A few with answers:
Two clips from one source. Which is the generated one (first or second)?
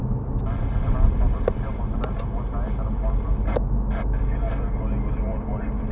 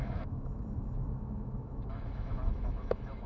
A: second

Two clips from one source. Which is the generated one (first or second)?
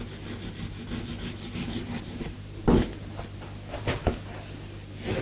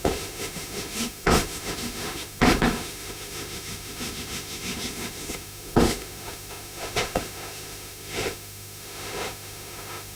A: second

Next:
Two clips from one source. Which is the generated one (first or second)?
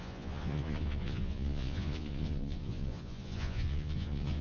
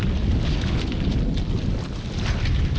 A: first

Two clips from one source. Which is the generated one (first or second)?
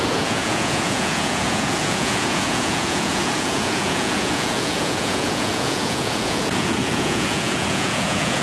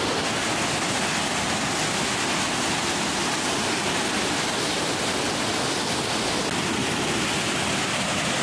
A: first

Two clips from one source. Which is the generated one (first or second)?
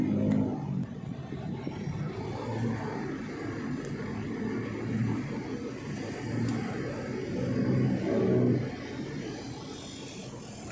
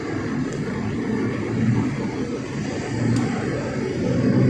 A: second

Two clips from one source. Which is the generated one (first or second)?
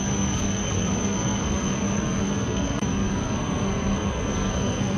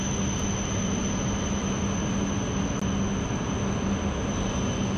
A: first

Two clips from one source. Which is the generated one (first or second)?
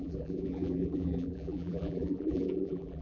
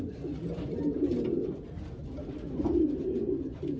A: first